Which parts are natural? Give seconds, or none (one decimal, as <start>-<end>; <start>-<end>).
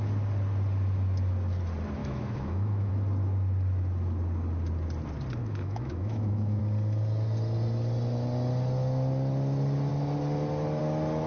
0.0-2.0; 2.9-5.4; 6.6-11.3